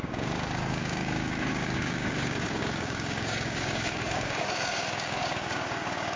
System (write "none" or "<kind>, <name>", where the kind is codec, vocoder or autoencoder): codec, DAC